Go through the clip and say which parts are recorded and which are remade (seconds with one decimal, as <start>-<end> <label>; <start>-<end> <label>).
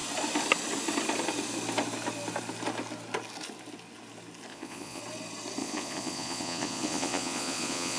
0.0-4.5 recorded; 4.5-5.0 remade; 5.0-5.6 recorded; 5.6-8.0 remade